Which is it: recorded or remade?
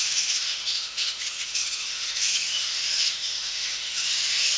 remade